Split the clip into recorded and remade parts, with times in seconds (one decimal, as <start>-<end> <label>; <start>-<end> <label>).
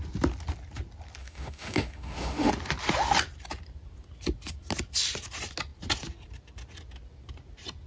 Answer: 0.0-1.2 recorded; 1.2-2.5 remade; 2.5-7.9 recorded